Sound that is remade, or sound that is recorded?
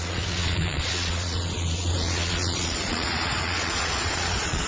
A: remade